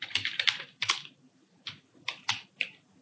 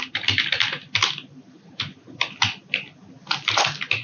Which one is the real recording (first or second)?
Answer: second